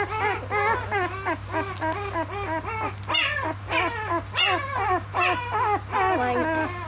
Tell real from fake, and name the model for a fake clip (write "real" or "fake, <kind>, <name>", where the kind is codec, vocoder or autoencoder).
real